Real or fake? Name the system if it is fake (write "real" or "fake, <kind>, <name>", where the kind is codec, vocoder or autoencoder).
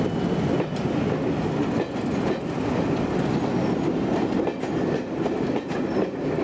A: real